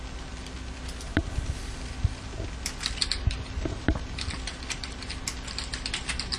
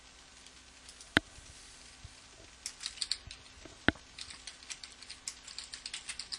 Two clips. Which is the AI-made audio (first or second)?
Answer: first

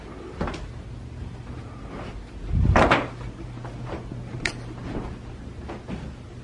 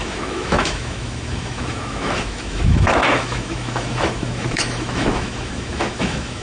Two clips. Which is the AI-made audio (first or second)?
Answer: second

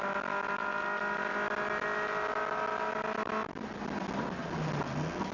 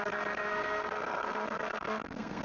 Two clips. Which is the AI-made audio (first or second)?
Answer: second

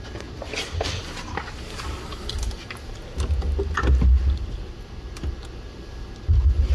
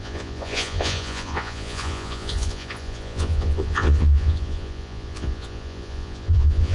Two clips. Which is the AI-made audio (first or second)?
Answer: second